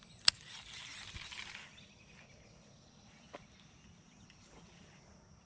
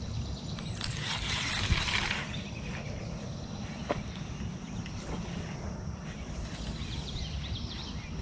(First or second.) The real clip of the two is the first